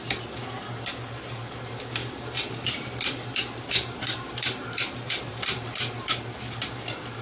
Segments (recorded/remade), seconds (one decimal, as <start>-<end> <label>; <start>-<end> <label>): 0.0-2.0 recorded; 2.0-5.3 remade; 5.3-7.2 recorded